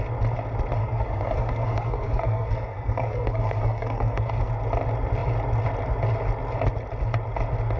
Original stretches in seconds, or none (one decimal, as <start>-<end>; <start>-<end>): 0.0-0.8; 4.5-7.8